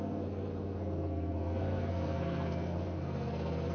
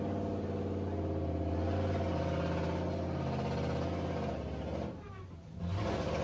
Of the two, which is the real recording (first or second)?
second